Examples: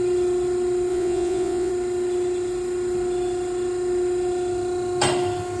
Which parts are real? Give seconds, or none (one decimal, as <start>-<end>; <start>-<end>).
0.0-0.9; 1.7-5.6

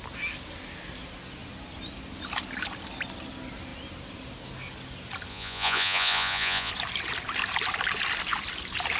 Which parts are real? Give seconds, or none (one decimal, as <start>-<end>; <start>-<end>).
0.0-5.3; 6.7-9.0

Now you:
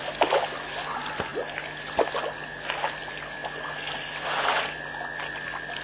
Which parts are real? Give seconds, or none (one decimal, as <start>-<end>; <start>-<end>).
0.0-5.8